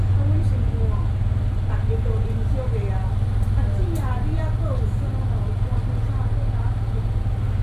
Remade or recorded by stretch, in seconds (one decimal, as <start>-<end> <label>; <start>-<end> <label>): 0.0-7.6 recorded